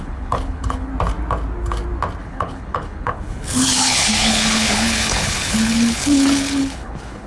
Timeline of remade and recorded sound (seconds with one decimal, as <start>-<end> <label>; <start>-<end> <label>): 0.0-0.9 remade; 0.9-2.2 recorded; 2.2-7.3 remade